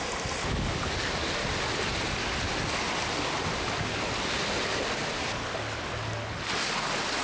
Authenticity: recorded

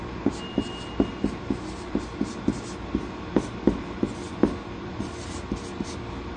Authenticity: recorded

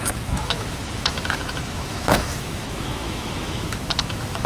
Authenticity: remade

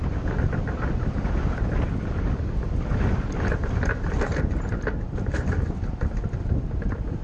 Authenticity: recorded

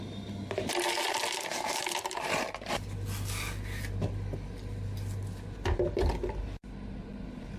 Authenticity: recorded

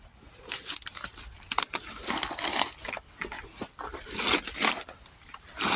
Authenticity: remade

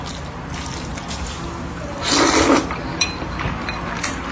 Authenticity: recorded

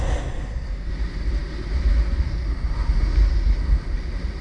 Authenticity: recorded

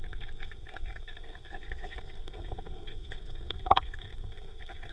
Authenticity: remade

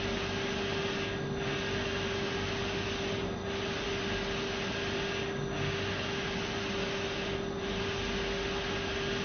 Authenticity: recorded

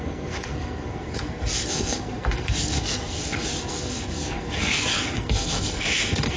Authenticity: remade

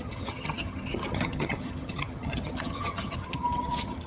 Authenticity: remade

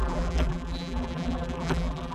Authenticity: remade